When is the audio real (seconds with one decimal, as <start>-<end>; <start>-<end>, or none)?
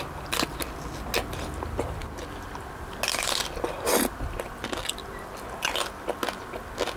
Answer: 0.0-7.0